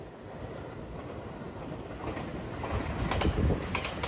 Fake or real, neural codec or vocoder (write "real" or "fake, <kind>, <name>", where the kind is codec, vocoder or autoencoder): real